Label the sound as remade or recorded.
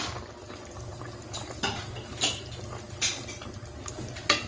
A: recorded